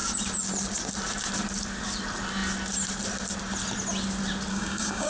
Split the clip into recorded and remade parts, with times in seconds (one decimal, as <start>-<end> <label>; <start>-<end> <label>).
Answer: 0.0-4.5 recorded; 4.5-5.1 remade